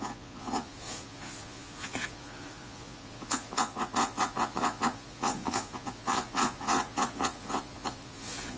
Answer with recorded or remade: remade